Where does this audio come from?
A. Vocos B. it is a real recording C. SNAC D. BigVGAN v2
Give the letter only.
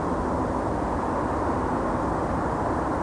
B